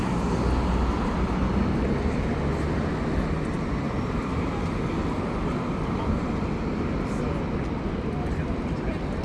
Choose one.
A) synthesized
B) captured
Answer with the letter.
B